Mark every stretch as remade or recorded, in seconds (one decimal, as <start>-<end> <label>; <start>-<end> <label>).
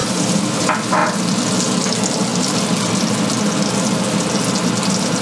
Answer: 0.0-0.6 remade; 0.6-5.2 recorded